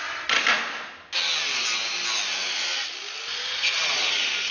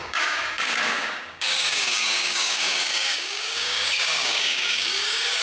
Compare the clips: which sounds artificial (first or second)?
second